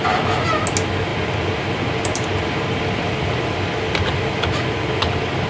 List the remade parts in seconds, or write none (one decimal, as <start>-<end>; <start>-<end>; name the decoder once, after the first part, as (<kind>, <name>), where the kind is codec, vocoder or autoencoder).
1.1-4.4 (vocoder, BigVGAN v2)